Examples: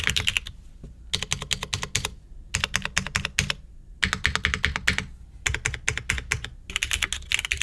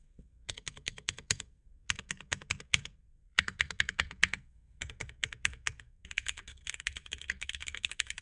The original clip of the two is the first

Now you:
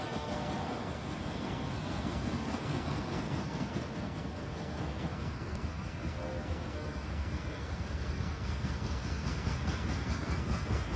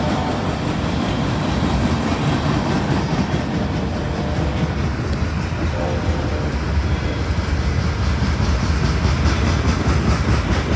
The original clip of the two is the second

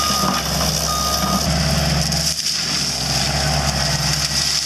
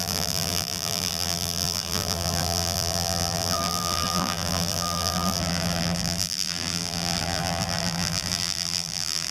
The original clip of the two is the first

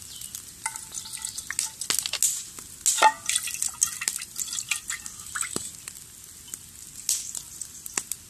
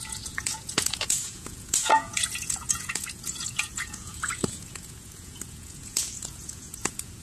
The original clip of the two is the first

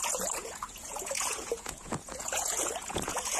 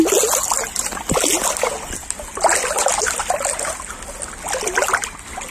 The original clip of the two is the second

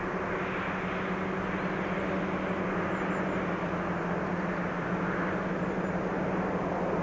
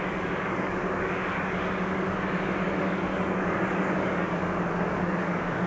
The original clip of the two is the first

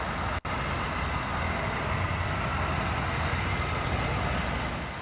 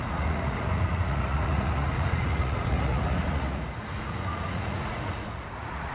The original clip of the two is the first